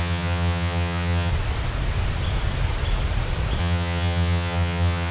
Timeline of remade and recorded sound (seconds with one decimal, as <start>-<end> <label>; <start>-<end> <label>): 0.0-1.3 remade; 1.3-3.6 recorded; 3.6-5.1 remade